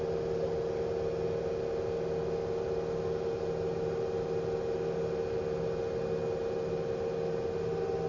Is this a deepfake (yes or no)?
no